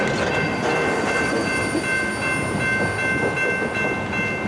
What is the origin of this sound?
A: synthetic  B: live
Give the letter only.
B